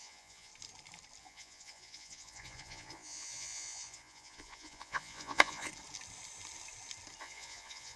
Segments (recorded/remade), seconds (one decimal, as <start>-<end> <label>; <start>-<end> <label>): 0.0-0.5 remade; 0.5-1.2 recorded; 1.2-5.7 remade; 5.7-7.2 recorded; 7.2-8.0 remade